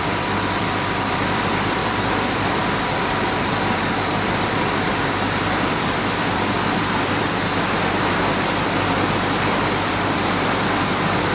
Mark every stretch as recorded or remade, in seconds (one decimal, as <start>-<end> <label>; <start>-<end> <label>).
0.0-11.3 remade

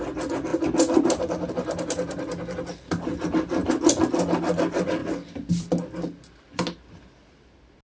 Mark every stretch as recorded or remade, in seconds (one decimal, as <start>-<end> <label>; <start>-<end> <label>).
0.0-7.9 recorded